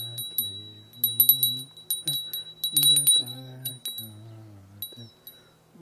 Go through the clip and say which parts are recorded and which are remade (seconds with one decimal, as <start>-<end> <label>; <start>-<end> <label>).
0.0-3.2 recorded; 3.2-3.7 remade; 3.7-5.8 recorded

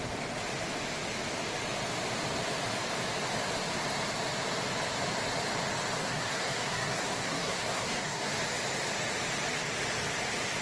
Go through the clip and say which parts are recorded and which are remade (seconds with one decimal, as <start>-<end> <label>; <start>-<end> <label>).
0.0-6.0 recorded; 6.0-8.3 remade; 8.3-10.6 recorded

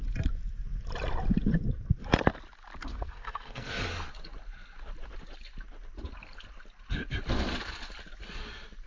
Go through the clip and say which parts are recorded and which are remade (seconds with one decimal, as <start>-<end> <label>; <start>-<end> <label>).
0.0-2.9 recorded; 2.9-3.8 remade; 3.8-8.9 recorded

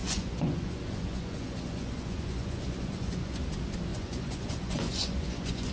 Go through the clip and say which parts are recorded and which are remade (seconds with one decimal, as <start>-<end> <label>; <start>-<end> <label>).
0.0-3.4 remade; 3.4-3.9 recorded; 3.9-5.7 remade

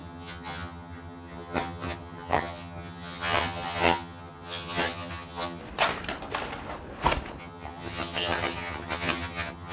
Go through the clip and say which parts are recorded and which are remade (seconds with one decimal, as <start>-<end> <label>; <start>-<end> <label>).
0.0-5.6 remade; 5.6-7.4 recorded; 7.4-9.7 remade